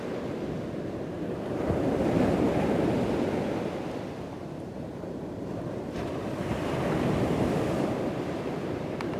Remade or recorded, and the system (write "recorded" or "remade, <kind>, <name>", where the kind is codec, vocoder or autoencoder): remade, vocoder, BigVGAN v2